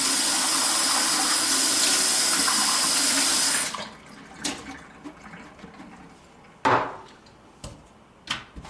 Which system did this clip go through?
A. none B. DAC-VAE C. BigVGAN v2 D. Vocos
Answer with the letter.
A